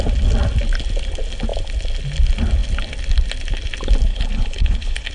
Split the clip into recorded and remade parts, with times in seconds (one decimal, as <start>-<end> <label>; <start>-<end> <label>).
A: 0.0-4.1 recorded; 4.1-5.1 remade